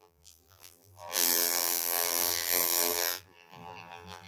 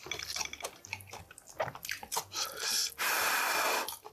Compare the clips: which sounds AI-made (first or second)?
first